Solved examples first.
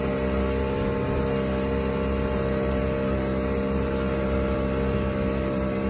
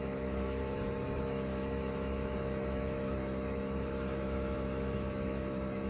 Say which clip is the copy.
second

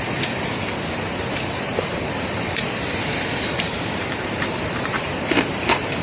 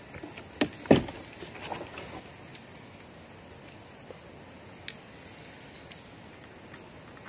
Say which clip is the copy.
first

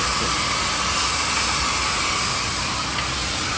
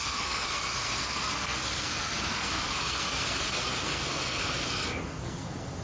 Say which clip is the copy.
second